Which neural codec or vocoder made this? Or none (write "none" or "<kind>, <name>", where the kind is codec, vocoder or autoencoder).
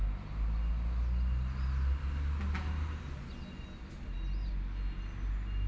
none